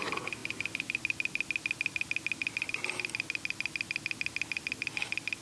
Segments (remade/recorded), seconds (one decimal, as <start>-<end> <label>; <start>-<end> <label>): 0.0-5.4 recorded